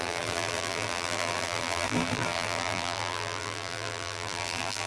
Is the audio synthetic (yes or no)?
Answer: yes